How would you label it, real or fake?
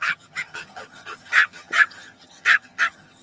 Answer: fake